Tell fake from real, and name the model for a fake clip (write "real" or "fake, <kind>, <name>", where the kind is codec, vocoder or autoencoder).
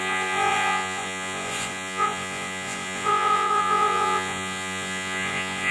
fake, vocoder, Vocos